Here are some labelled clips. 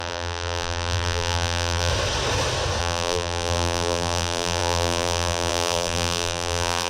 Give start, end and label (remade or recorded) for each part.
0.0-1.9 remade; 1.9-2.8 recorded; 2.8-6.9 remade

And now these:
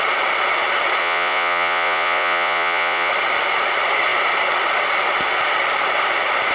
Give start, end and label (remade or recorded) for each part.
0.0-1.0 recorded; 1.0-3.1 remade; 3.1-6.5 recorded

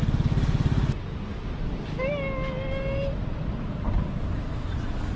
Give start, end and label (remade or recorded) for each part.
0.0-5.2 recorded

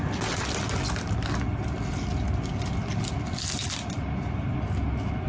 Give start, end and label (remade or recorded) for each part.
0.0-5.3 recorded